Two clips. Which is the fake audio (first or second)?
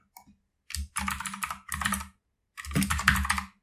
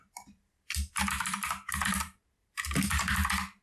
second